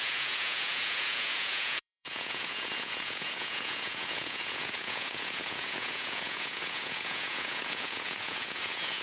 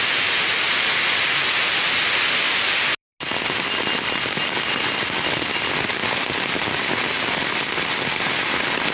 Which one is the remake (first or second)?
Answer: first